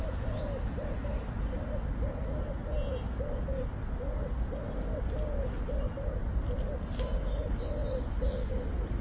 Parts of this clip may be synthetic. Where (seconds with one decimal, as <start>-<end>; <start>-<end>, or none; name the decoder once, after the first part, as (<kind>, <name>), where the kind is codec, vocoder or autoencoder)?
none